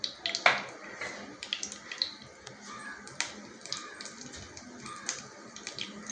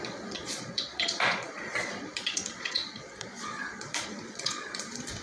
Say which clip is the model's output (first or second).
second